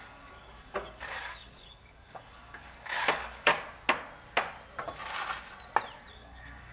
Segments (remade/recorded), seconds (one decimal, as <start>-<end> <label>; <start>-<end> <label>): 0.0-3.5 remade; 3.5-6.1 recorded; 6.1-6.7 remade